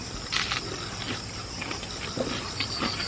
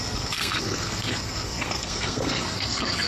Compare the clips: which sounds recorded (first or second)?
first